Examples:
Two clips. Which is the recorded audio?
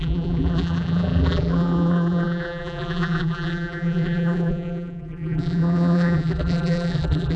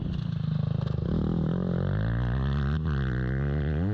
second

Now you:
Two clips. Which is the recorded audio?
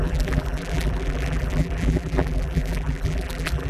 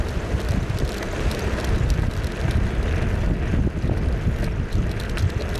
second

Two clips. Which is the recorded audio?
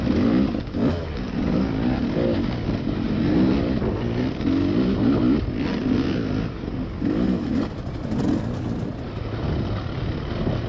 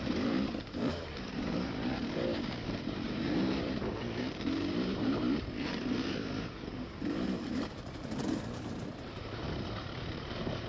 first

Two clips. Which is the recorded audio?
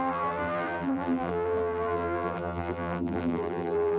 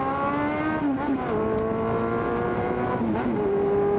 second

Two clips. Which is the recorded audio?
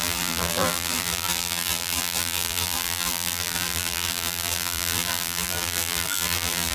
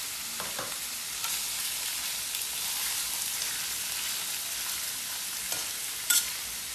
second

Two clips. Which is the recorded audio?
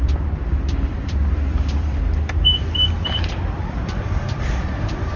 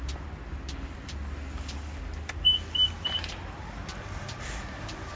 second